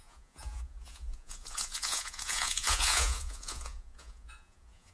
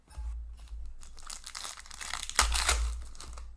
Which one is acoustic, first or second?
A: second